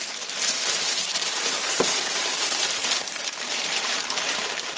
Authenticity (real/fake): fake